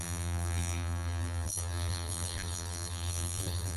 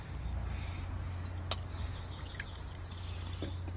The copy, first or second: first